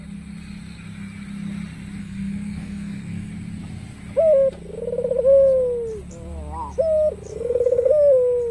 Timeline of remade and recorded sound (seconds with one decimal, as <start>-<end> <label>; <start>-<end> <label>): 0.0-2.0 recorded; 2.0-3.3 remade; 3.3-7.3 recorded; 7.3-7.9 remade; 7.9-8.5 recorded